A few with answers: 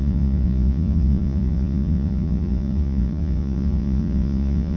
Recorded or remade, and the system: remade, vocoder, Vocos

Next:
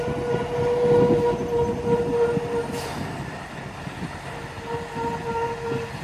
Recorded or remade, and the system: recorded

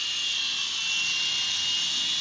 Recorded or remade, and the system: recorded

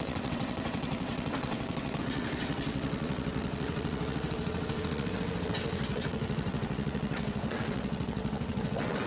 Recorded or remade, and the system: remade, vocoder, WaveNeXt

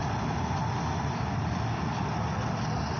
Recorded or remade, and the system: recorded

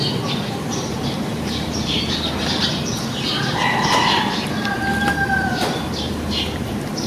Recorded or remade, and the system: remade, vocoder, BigVGAN v2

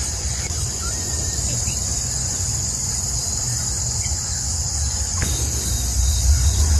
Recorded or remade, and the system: remade, vocoder, Vocos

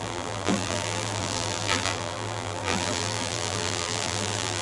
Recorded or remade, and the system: remade, vocoder, BigVGAN v2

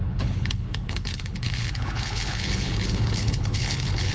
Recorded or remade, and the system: remade, codec, HILCodec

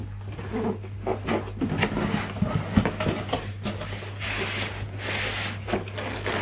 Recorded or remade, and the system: recorded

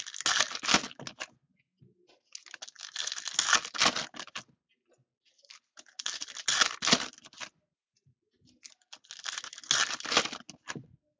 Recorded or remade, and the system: recorded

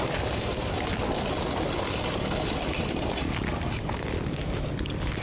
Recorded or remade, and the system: recorded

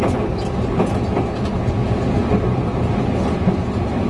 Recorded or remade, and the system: recorded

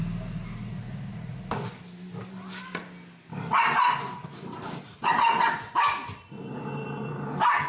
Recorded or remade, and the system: recorded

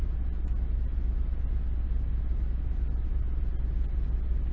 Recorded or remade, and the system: recorded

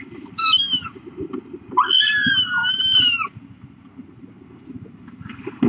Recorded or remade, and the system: recorded